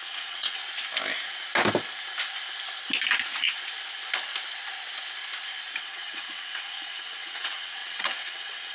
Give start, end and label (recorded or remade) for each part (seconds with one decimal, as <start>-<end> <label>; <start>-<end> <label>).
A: 0.0-0.6 remade; 0.6-5.8 recorded; 5.8-8.7 remade